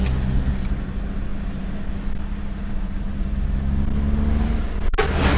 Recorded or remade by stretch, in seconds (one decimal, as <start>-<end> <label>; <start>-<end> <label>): 0.0-5.4 recorded